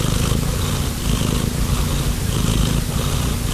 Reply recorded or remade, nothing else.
recorded